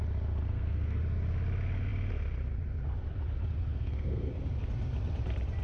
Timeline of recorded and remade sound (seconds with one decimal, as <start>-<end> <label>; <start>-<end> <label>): 0.0-0.5 recorded; 0.5-1.0 remade; 1.0-3.7 recorded; 3.7-4.4 remade; 4.4-5.6 recorded